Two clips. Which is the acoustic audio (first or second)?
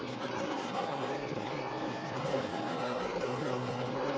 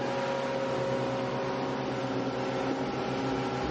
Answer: second